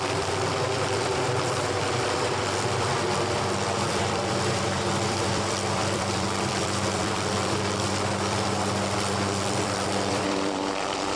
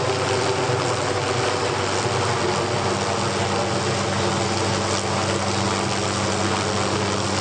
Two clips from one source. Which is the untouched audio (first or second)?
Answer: second